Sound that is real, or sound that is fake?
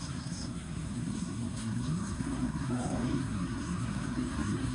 fake